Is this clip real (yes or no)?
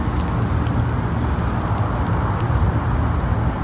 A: yes